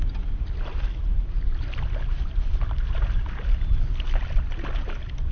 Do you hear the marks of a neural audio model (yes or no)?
no